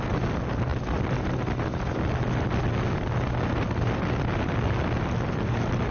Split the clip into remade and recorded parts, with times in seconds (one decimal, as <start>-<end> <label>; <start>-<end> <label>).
0.0-5.9 recorded